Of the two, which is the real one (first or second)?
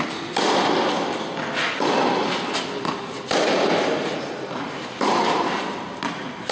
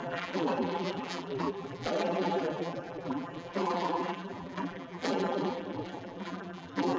first